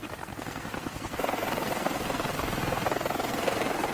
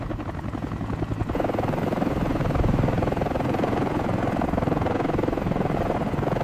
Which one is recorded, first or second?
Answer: second